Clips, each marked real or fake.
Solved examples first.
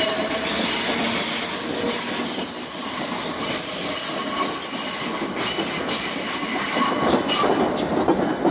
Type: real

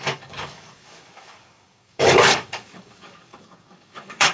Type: fake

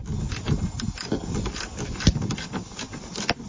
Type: real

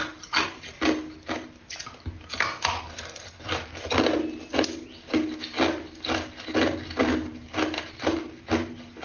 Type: real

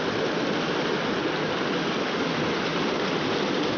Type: real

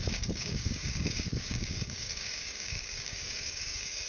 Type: fake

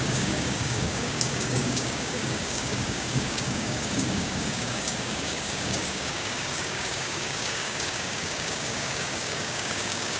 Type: fake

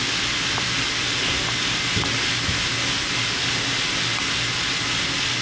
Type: real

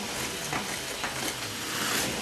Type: real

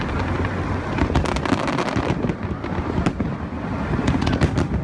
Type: real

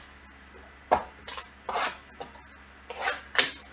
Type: real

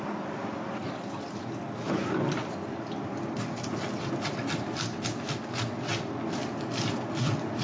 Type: real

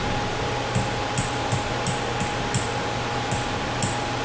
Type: real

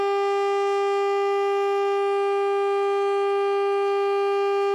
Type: real